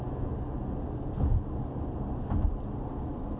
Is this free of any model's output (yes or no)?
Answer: yes